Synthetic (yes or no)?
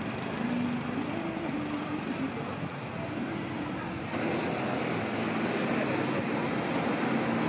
no